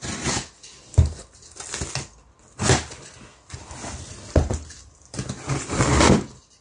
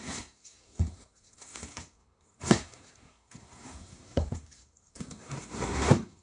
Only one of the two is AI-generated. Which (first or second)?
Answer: second